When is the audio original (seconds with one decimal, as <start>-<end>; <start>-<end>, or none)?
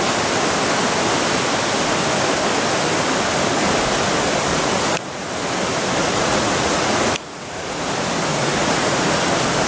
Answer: 0.0-4.5; 5.3-6.0; 7.8-8.3; 9.2-9.7